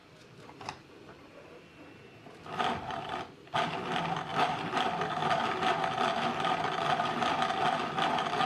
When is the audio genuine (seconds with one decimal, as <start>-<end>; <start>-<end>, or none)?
0.0-8.5